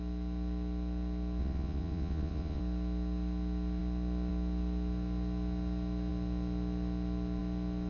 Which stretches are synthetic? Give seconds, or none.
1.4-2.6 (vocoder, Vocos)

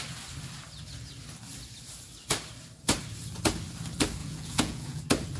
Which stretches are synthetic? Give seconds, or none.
4.2-5.0 (vocoder, Vocos)

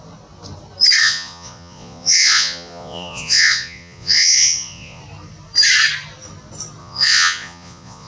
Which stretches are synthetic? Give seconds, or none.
1.0-5.0 (vocoder, Vocos); 6.8-8.1

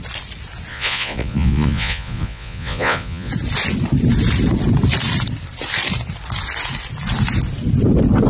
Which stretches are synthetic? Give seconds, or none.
0.7-3.3 (vocoder, Vocos)

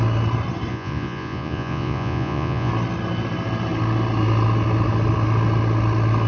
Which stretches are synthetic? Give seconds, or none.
0.7-2.7 (vocoder, Vocos)

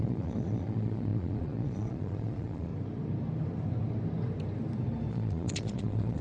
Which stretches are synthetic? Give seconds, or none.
0.0-2.7 (vocoder, Vocos); 5.1-6.2

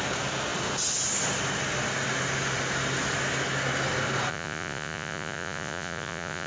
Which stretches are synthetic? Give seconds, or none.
4.3-6.5 (vocoder, Vocos)